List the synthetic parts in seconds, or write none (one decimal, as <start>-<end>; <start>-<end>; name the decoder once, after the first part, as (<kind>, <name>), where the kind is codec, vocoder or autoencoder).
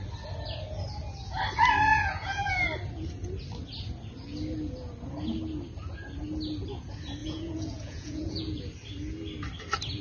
1.9-2.5 (vocoder, Vocos); 7.2-8.6